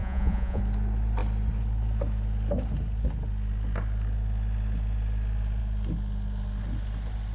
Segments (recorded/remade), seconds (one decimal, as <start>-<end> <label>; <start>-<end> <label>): 0.0-0.6 remade; 0.6-7.3 recorded